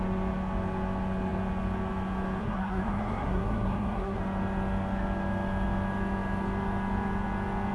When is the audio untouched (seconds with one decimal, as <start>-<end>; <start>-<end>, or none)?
0.0-2.4; 4.2-7.7